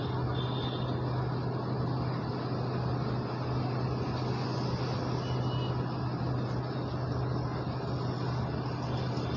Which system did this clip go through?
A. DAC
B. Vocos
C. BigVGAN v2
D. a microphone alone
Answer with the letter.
D